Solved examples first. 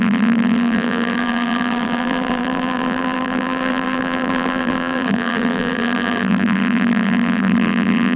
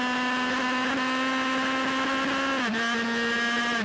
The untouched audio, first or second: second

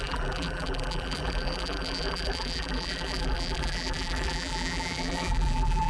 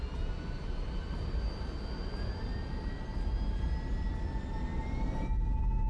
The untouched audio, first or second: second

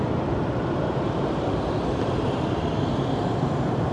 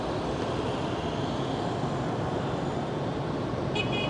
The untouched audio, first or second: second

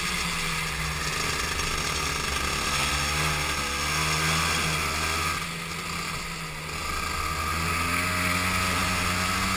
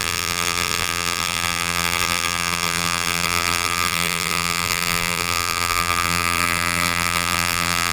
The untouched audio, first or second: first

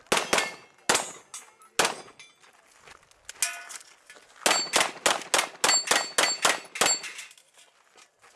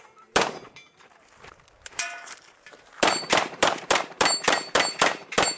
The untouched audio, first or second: first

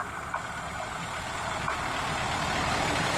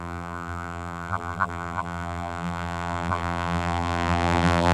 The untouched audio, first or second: first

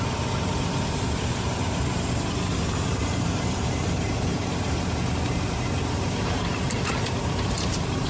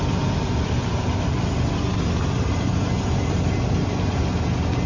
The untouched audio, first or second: second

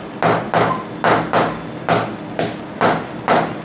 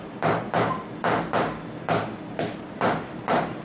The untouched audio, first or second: first